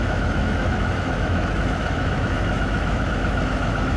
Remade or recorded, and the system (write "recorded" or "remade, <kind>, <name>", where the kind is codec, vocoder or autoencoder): remade, autoencoder, DAC-VAE